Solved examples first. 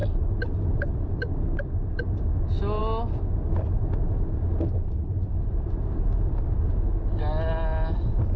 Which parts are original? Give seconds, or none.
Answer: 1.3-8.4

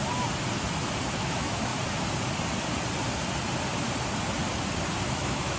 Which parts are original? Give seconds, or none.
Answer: 0.0-1.2; 1.7-5.1